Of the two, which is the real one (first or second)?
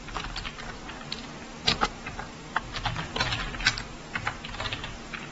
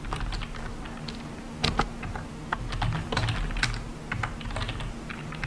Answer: second